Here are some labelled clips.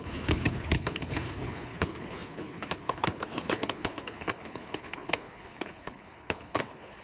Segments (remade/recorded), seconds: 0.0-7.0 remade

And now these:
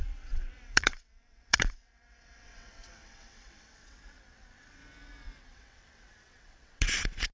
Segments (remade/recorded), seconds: 0.0-4.8 remade; 4.8-5.4 recorded; 5.4-7.3 remade

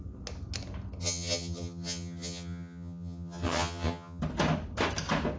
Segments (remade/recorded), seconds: 0.0-1.0 recorded; 1.0-4.2 remade; 4.2-5.4 recorded

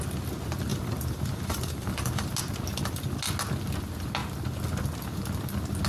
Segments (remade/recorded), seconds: 0.0-0.7 recorded; 0.7-2.3 remade; 2.3-5.9 recorded

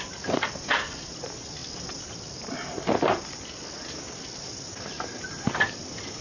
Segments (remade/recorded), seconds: 0.0-6.2 recorded

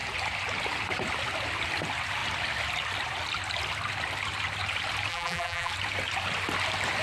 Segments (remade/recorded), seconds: 0.0-5.1 recorded; 5.1-5.7 remade; 5.7-7.0 recorded

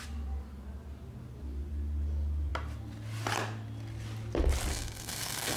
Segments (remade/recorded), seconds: 0.0-4.7 recorded; 4.7-5.6 remade